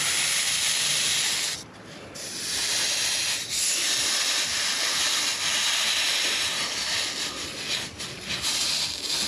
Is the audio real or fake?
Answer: real